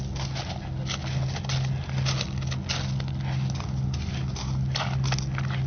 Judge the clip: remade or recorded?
recorded